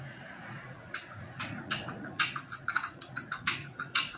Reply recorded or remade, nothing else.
remade